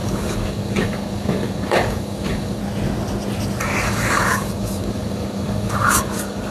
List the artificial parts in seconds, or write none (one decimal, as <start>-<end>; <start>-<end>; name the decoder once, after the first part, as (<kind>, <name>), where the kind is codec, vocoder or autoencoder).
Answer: 0.0-2.6 (codec, DAC); 3.6-6.5